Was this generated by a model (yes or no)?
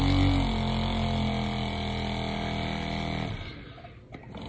no